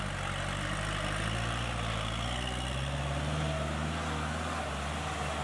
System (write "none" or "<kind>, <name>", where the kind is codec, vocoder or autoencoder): none